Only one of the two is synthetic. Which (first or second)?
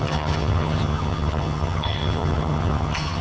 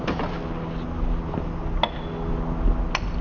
first